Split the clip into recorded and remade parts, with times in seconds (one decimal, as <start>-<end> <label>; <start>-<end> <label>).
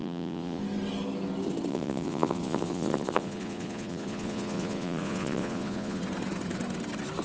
0.0-0.6 remade; 0.6-1.7 recorded; 1.7-6.0 remade; 6.0-7.2 recorded